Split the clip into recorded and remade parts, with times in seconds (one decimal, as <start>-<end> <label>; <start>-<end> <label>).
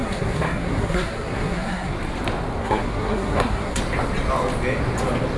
0.0-1.9 remade; 1.9-2.6 recorded; 2.6-3.8 remade; 3.8-5.4 recorded